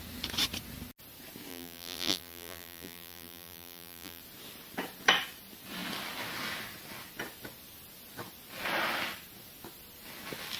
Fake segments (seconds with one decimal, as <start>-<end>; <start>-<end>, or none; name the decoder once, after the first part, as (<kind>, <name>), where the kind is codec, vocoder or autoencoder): 1.5-4.2 (vocoder, BigVGAN v2)